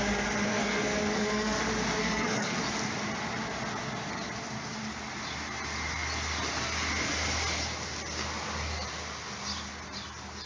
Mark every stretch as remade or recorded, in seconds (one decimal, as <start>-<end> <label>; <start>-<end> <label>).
0.0-0.5 recorded; 0.5-1.6 remade; 1.6-2.0 recorded; 2.0-2.6 remade; 2.6-10.5 recorded